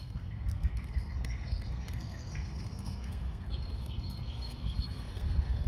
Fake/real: fake